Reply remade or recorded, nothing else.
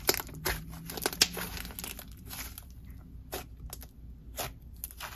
recorded